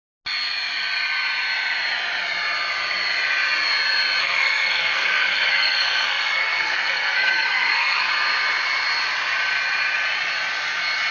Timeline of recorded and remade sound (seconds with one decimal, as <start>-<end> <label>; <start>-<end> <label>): 0.0-4.2 recorded; 4.2-8.1 remade; 8.1-11.1 recorded